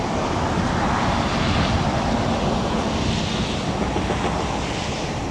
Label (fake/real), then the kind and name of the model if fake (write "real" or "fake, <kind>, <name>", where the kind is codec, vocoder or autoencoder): real